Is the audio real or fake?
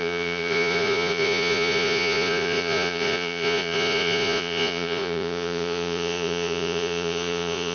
fake